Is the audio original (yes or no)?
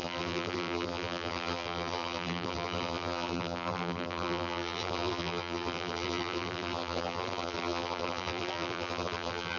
no